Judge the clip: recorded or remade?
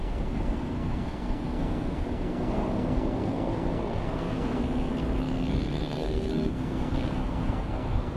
remade